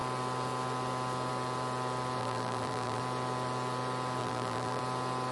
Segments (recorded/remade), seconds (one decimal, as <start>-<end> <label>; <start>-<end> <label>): 0.0-2.2 recorded; 2.2-3.0 remade; 3.0-4.2 recorded; 4.2-4.8 remade; 4.8-5.3 recorded